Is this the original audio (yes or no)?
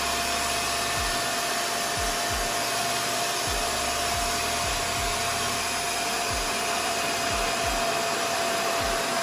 yes